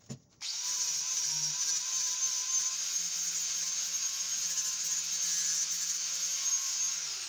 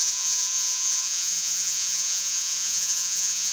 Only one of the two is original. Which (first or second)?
first